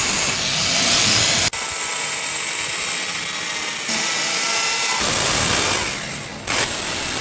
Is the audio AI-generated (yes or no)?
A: no